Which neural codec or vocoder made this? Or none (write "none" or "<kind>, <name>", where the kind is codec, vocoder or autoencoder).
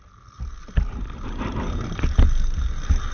none